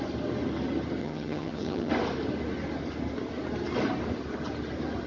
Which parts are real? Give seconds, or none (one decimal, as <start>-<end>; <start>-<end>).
0.0-1.0; 1.9-5.1